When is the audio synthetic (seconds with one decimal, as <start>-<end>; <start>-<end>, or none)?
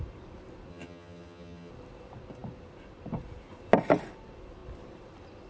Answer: 0.7-1.7